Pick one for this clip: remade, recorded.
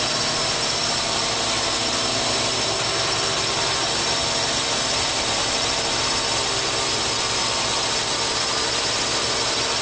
recorded